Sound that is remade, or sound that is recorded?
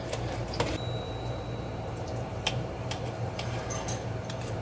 remade